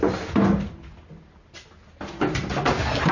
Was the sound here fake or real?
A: real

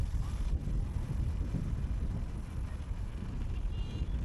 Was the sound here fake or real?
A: real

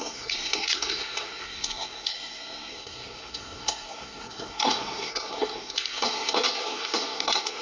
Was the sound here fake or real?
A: fake